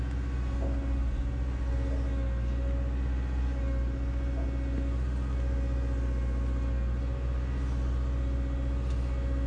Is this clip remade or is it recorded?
recorded